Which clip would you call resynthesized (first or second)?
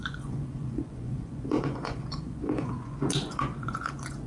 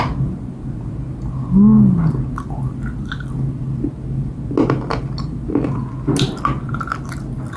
first